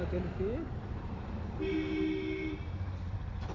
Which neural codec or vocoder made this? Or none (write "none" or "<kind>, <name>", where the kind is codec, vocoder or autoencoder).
none